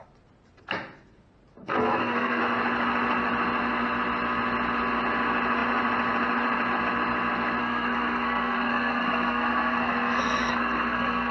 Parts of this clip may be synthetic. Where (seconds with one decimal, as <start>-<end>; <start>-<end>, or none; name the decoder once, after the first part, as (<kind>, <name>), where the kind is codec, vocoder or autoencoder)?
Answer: 1.6-2.4 (codec, SNAC); 7.6-11.3